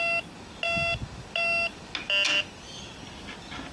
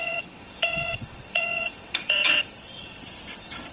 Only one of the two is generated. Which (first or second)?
second